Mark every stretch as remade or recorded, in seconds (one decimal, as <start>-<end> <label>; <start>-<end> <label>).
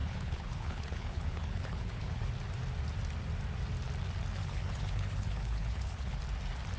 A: 0.0-2.3 remade; 2.3-4.4 recorded; 4.4-6.2 remade; 6.2-6.8 recorded